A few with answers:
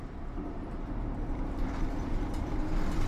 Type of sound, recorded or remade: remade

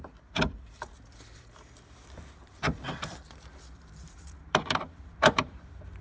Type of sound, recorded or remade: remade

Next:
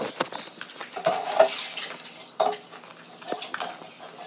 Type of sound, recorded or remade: recorded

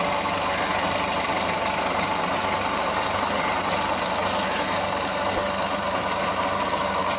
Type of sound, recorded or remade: recorded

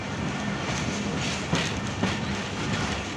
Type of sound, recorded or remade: recorded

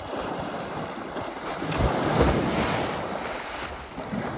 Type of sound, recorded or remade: remade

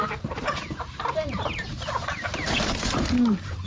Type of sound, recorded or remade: remade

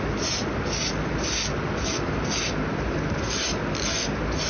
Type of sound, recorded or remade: recorded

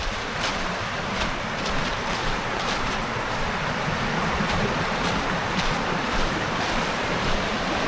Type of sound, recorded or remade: remade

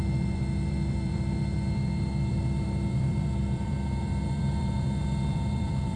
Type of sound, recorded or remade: remade